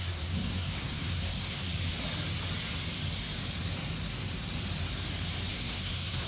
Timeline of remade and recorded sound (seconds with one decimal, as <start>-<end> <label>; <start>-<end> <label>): 0.0-1.7 remade; 1.7-5.5 recorded; 5.5-6.3 remade